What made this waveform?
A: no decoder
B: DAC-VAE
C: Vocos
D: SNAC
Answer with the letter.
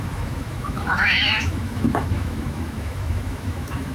B